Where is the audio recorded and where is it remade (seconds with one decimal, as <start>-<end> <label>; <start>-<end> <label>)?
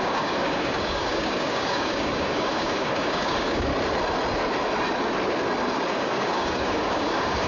0.0-3.7 remade; 3.7-5.9 recorded; 5.9-7.5 remade